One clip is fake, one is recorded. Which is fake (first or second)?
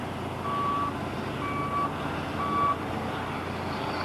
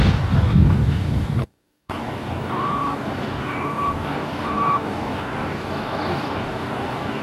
second